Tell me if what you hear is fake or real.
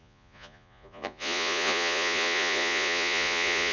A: fake